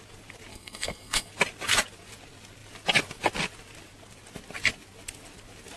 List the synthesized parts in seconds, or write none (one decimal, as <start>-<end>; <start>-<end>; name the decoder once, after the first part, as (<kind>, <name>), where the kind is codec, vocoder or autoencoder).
0.5-1.3 (codec, SNAC)